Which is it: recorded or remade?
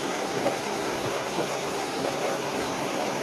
remade